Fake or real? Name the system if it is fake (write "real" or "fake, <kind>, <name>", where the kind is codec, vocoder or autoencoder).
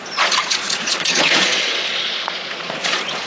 fake, vocoder, Vocos